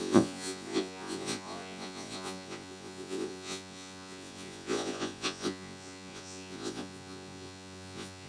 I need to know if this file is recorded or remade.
remade